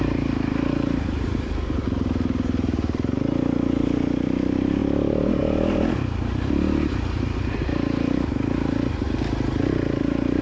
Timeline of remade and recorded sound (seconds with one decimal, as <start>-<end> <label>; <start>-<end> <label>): 0.0-4.8 remade; 4.8-5.4 recorded; 5.4-7.7 remade; 7.7-10.0 recorded; 10.0-10.4 remade